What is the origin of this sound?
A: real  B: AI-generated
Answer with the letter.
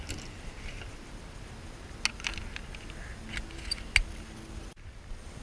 A